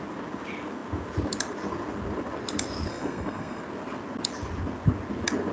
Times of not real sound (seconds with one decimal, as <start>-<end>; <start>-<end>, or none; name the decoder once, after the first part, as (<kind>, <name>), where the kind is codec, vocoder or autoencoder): 2.9-3.6 (codec, SNAC)